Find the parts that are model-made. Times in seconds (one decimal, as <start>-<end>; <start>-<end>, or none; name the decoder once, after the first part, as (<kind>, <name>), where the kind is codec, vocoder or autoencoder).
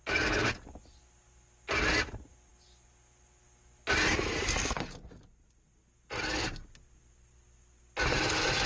none